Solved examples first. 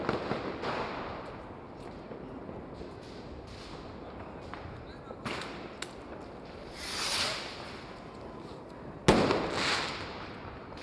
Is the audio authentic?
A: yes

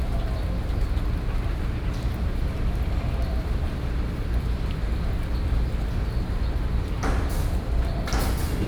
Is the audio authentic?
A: yes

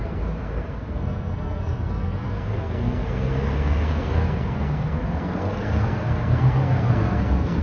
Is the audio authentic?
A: no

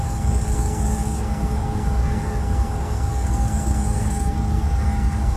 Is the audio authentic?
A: no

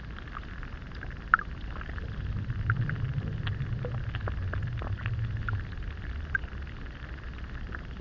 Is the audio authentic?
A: yes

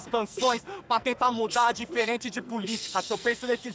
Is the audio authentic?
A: no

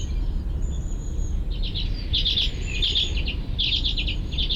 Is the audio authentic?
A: yes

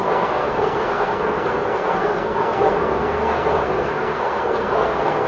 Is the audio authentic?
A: no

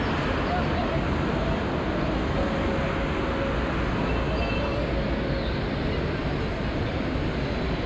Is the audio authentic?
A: yes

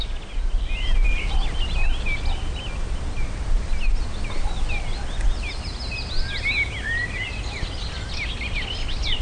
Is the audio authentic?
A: yes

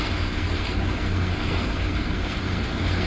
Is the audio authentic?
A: no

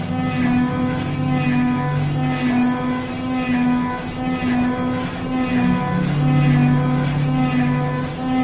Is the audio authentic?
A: yes